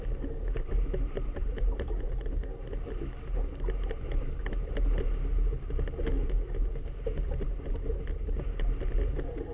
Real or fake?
real